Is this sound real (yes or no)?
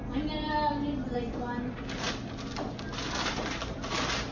yes